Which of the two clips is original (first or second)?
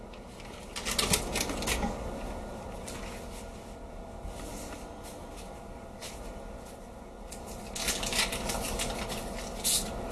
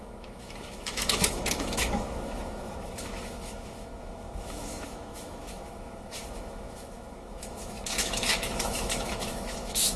first